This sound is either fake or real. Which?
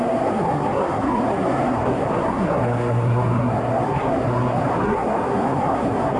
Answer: fake